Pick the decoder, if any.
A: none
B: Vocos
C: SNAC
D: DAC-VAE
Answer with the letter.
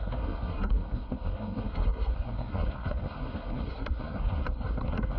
C